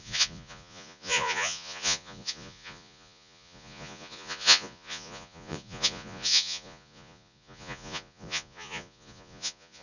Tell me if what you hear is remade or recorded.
remade